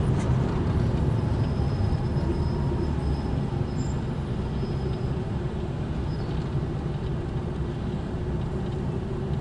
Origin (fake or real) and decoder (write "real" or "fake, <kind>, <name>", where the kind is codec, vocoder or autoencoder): real